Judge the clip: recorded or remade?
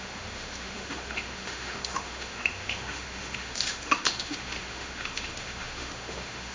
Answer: remade